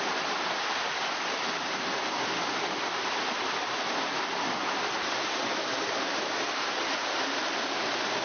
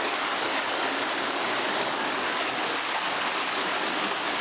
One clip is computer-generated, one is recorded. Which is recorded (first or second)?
first